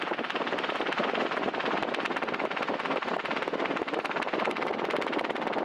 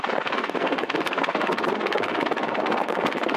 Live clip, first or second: first